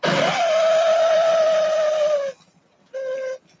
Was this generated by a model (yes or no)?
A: no